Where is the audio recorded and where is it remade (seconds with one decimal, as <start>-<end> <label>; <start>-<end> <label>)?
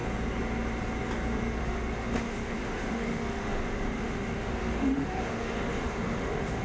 0.0-1.6 recorded; 1.6-6.6 remade